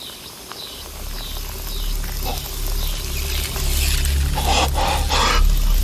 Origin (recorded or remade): recorded